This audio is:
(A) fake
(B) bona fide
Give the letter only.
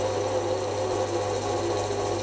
B